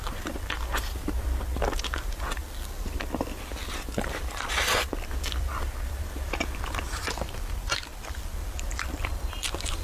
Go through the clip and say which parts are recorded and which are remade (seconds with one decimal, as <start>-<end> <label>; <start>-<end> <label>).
0.0-2.4 remade; 2.4-3.0 recorded; 3.0-7.9 remade; 7.9-8.6 recorded; 8.6-9.8 remade